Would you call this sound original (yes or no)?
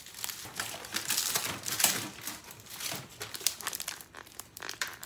no